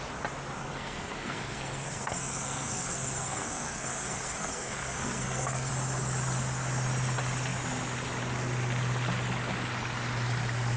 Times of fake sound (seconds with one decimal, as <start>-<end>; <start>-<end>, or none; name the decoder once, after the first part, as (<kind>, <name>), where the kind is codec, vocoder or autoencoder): 0.6-5.7 (codec, SNAC)